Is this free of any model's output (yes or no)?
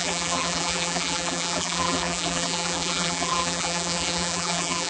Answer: no